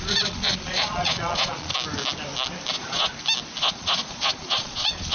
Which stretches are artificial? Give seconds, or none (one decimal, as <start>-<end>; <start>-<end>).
0.0-1.7; 2.7-3.1; 3.6-5.1